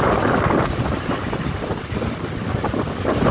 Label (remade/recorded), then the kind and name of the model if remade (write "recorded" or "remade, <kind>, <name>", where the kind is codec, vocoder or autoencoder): recorded